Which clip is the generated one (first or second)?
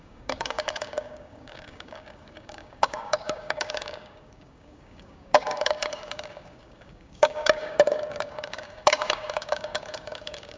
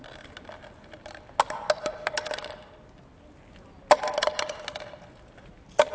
first